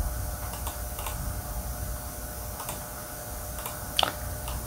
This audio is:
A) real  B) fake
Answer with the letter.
A